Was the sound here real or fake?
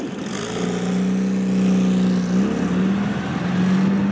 real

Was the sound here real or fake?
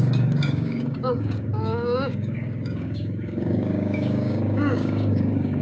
fake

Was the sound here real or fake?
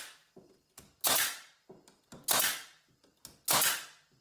real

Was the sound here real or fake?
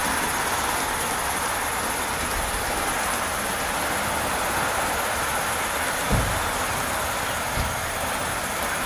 real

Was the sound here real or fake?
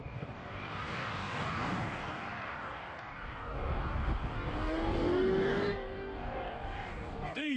fake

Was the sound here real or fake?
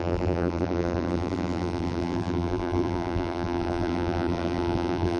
fake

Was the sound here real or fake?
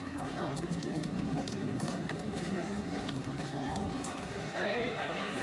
fake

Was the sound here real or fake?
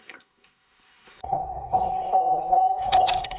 fake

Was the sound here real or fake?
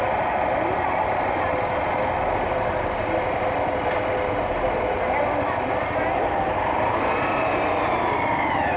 real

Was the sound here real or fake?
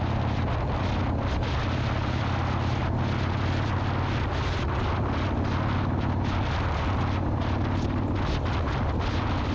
real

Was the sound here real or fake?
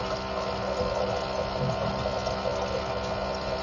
real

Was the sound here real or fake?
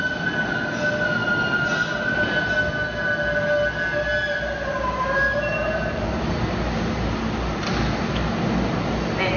real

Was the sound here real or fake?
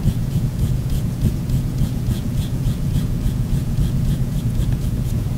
fake